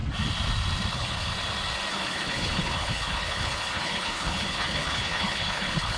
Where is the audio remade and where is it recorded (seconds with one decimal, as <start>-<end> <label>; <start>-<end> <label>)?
0.0-0.9 recorded; 0.9-1.3 remade; 1.3-1.9 recorded; 1.9-6.0 remade